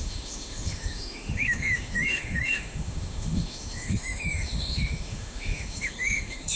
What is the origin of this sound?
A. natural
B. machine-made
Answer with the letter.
B